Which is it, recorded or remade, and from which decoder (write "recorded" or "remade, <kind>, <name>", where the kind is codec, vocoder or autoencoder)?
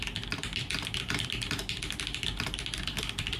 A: remade, vocoder, BigVGAN v2